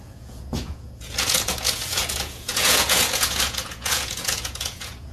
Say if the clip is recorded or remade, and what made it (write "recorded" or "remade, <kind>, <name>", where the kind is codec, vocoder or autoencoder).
remade, vocoder, Vocos